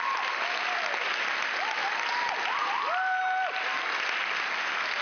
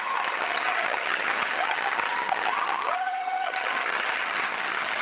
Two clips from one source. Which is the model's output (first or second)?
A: second